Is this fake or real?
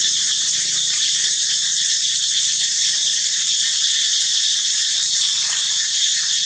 fake